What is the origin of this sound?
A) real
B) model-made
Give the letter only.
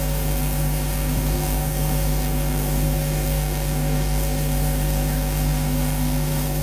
B